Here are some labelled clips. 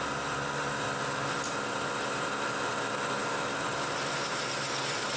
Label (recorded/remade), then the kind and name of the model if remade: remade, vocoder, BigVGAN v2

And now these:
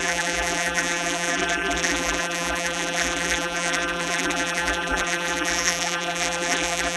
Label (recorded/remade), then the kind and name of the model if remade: remade, vocoder, BigVGAN v2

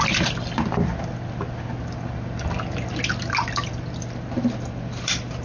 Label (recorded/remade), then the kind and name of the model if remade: remade, vocoder, BigVGAN v2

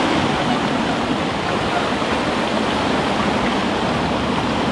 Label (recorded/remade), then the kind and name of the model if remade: recorded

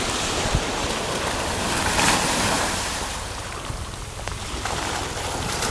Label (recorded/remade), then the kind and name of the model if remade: recorded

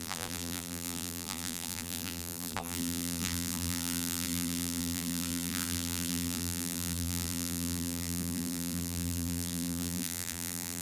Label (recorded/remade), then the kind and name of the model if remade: remade, vocoder, BigVGAN v2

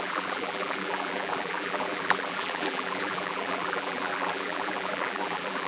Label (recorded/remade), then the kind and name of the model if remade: remade, vocoder, BigVGAN v2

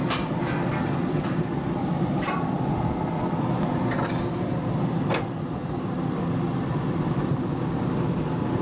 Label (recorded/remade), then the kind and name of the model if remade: remade, vocoder, BigVGAN v2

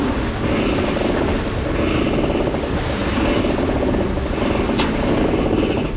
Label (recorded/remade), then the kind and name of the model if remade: recorded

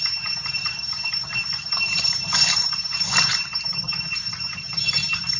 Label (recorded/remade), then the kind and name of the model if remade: remade, vocoder, BigVGAN v2